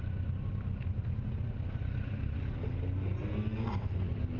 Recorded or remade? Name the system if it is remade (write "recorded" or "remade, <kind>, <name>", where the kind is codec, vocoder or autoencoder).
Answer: recorded